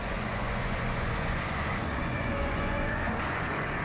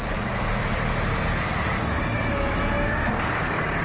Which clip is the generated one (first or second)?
first